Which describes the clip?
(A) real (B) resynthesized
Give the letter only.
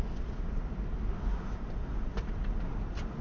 A